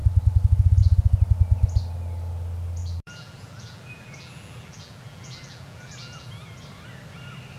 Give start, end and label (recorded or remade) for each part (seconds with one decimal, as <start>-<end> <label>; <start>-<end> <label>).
0.0-2.8 recorded; 2.8-6.6 remade; 6.6-7.6 recorded